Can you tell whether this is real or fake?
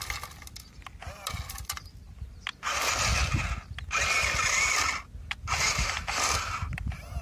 real